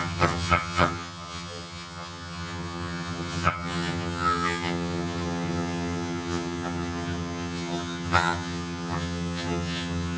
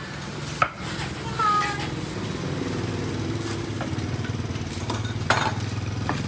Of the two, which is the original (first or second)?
second